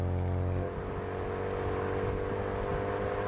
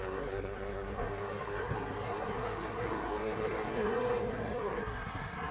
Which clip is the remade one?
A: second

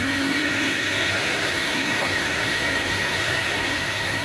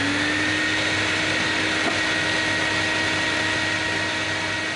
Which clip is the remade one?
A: first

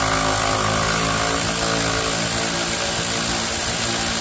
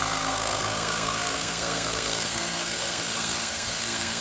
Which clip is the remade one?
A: second